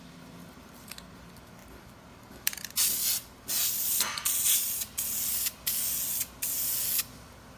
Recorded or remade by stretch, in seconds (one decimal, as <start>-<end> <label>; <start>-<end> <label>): 0.0-7.6 recorded